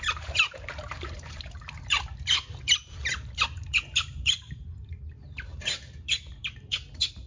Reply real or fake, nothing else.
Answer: fake